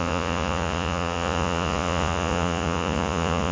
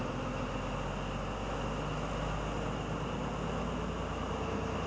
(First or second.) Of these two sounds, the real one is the second